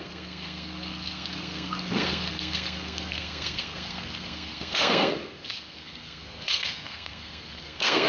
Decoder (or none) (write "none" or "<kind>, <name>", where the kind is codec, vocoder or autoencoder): codec, SNAC